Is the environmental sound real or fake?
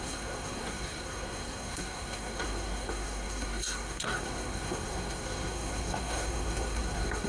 fake